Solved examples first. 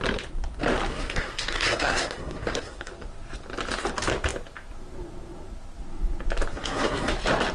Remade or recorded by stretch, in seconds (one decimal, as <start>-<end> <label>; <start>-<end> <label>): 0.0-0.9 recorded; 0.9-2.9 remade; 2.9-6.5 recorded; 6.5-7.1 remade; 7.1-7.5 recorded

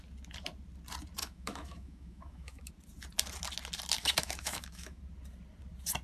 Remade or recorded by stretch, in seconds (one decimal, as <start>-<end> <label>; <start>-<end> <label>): 0.0-1.2 recorded; 1.2-2.7 remade; 2.7-4.0 recorded; 4.0-5.0 remade; 5.0-6.0 recorded

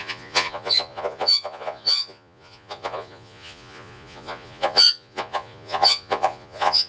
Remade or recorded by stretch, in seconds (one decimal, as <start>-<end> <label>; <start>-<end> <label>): 0.0-6.9 remade

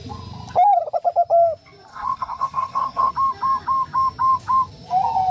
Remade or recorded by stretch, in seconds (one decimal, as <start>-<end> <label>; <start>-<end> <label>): 0.0-1.9 recorded; 1.9-3.1 remade; 3.1-5.3 recorded

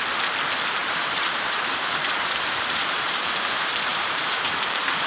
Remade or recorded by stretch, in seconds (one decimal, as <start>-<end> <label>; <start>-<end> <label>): 0.0-0.8 recorded; 0.8-3.3 remade; 3.3-3.9 recorded; 3.9-5.1 remade

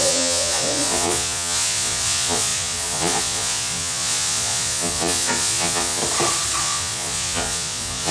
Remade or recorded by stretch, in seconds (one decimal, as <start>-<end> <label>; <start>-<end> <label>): 0.0-6.0 remade; 6.0-6.6 recorded; 6.6-8.1 remade

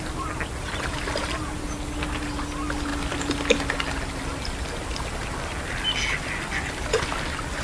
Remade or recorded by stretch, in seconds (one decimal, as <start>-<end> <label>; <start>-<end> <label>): 0.0-7.6 recorded